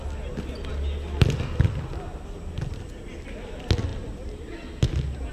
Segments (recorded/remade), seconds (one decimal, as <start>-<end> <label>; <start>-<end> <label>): 0.0-5.3 recorded